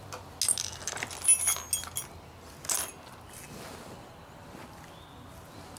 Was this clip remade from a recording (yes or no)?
no